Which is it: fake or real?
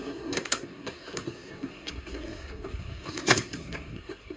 fake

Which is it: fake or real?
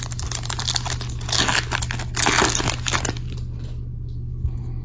real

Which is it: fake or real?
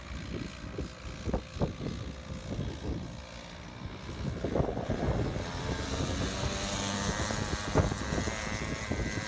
real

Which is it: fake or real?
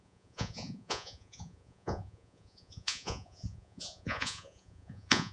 fake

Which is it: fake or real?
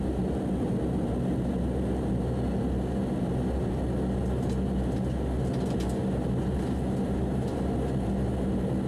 real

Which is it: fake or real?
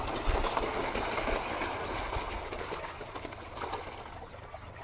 real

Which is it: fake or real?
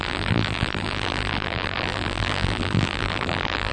fake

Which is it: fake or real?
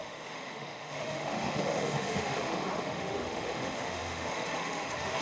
fake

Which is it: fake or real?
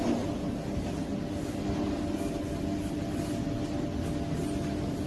real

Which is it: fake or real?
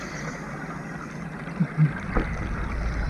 real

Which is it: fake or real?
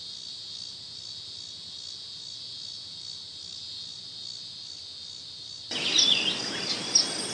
real